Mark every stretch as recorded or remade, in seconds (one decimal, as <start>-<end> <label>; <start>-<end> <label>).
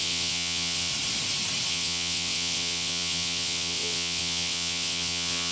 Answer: 0.0-0.9 remade; 0.9-1.7 recorded; 1.7-5.5 remade